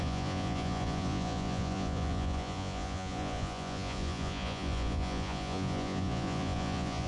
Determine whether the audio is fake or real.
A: fake